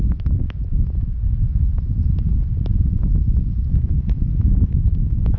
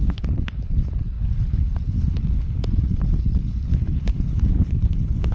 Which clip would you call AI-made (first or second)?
second